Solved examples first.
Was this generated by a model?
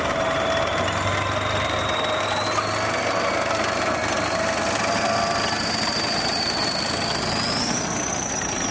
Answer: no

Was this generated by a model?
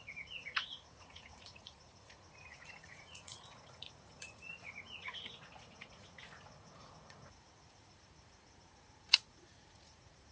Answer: yes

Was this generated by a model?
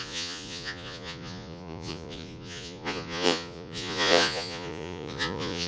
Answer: yes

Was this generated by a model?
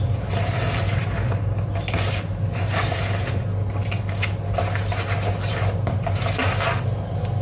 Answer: no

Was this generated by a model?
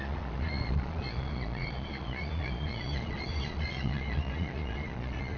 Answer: yes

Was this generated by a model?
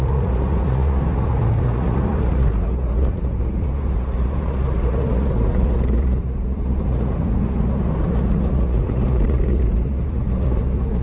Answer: yes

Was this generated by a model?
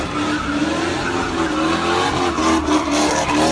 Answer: no